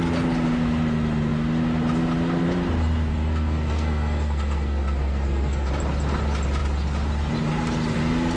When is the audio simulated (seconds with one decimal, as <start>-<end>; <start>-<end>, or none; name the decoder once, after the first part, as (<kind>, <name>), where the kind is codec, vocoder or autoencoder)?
3.1-5.7 (codec, SNAC)

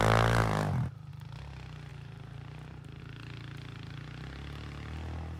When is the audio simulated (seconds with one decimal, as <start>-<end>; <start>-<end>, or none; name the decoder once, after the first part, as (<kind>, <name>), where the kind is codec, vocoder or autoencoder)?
1.9-3.0 (vocoder, BigVGAN v2)